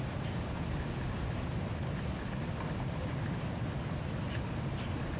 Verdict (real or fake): real